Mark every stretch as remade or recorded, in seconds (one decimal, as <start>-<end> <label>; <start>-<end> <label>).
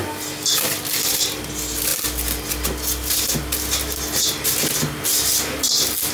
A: 0.0-6.1 recorded